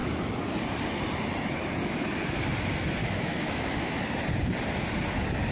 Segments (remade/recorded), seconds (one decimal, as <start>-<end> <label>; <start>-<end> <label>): 0.0-3.0 recorded; 3.0-4.0 remade; 4.0-5.5 recorded